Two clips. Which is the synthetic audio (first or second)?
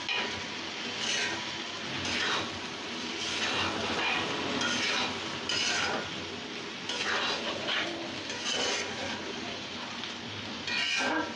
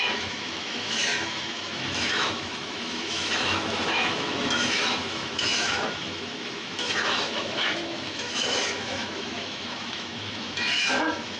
second